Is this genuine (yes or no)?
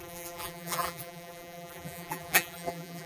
no